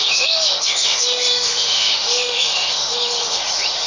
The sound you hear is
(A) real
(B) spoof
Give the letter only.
B